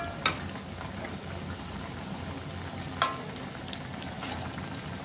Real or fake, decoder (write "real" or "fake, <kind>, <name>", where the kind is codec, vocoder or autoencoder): real